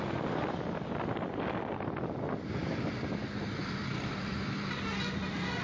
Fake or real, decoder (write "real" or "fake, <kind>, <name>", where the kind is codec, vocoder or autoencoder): real